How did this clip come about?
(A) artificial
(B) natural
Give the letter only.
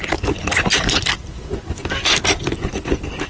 B